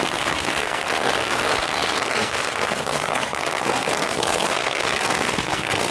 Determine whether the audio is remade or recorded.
remade